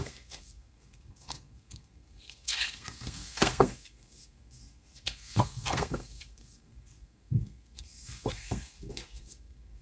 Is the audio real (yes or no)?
no